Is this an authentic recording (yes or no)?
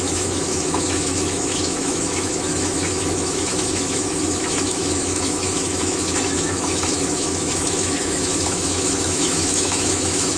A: no